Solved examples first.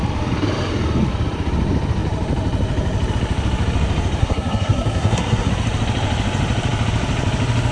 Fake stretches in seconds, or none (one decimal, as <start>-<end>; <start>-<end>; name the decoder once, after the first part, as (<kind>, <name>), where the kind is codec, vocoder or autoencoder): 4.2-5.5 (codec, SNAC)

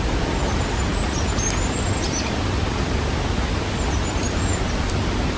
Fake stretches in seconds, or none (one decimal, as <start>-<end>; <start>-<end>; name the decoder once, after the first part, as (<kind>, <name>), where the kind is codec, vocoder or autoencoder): none

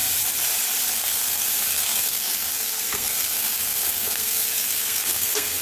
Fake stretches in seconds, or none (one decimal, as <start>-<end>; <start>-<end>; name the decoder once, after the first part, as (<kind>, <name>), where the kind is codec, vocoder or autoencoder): 0.9-5.6 (codec, SNAC)

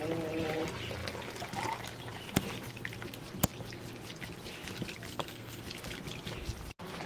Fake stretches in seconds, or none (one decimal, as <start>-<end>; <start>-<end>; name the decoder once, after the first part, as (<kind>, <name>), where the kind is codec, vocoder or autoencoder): 5.1-5.6 (codec, SNAC)

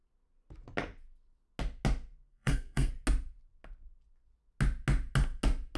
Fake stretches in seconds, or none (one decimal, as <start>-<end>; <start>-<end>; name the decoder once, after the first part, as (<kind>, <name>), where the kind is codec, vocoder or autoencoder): 2.3-2.9 (codec, SNAC)